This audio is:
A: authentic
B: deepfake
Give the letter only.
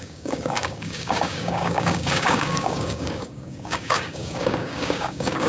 B